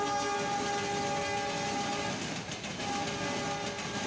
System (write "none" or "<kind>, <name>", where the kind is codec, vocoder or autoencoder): none